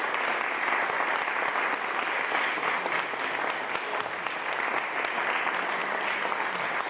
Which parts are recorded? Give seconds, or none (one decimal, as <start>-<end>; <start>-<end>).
0.0-6.9